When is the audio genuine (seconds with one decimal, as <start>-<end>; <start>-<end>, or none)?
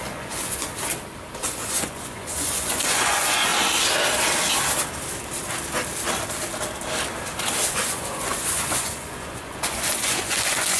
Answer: 0.7-1.4; 3.5-7.7